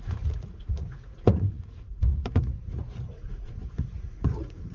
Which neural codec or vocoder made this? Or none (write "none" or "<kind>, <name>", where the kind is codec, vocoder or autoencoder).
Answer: vocoder, Vocos